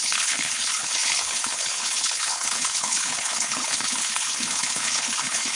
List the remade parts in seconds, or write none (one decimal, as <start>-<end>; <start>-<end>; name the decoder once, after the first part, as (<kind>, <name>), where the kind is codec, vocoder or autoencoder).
0.0-5.6 (codec, HILCodec)